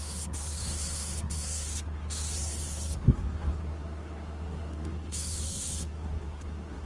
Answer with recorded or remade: remade